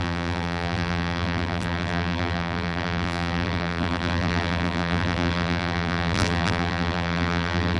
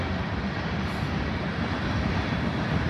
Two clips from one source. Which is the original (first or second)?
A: second